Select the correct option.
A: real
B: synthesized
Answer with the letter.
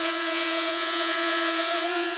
B